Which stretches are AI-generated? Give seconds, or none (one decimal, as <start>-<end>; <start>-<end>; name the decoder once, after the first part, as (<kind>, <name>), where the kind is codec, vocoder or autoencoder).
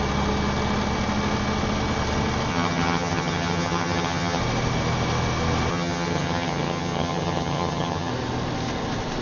2.5-4.4 (vocoder, HiFi-GAN); 5.7-8.1